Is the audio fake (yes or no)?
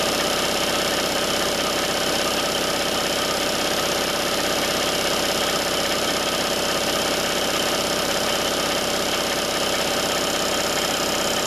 no